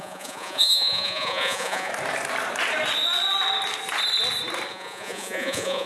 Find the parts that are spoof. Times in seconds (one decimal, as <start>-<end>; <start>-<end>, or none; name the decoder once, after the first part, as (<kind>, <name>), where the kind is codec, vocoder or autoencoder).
0.0-1.9 (vocoder, Vocos); 4.7-5.9